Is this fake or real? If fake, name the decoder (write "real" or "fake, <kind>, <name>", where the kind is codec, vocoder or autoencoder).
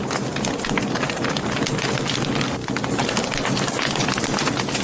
real